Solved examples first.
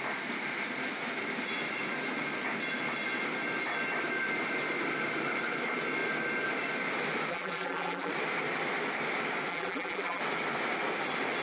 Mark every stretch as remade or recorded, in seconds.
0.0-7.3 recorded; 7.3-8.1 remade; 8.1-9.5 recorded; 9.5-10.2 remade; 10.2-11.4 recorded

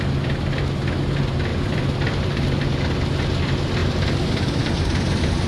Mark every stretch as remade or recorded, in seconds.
0.0-1.5 recorded; 1.5-2.6 remade; 2.6-3.8 recorded; 3.8-5.5 remade

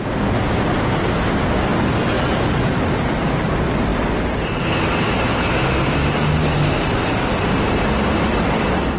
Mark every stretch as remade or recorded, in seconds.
0.0-9.0 recorded

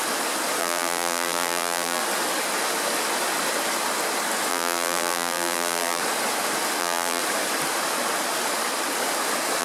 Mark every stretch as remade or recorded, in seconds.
0.0-0.6 recorded; 0.6-2.0 remade; 2.0-4.5 recorded; 4.5-6.0 remade; 6.0-6.8 recorded; 6.8-7.2 remade; 7.2-9.6 recorded

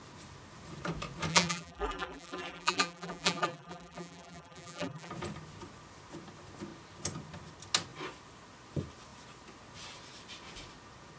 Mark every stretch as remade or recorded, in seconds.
0.0-1.3 recorded; 1.3-5.1 remade; 5.1-11.2 recorded

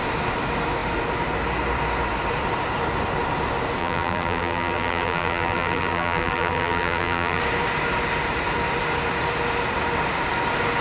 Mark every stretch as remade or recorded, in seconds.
0.0-3.8 recorded; 3.8-7.4 remade; 7.4-10.8 recorded